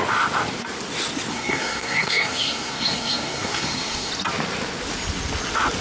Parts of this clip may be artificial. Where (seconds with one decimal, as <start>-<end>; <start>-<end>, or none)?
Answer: 1.3-4.1